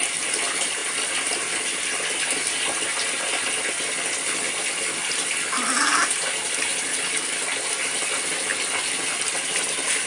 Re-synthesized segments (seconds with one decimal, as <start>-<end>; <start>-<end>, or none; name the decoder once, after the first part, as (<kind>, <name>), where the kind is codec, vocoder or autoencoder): none